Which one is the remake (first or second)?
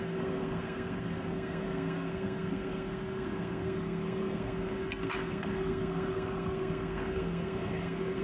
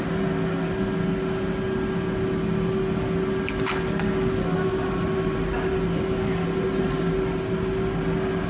first